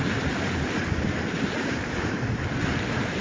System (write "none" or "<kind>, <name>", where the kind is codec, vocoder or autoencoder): none